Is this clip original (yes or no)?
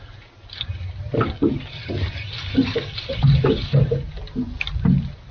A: yes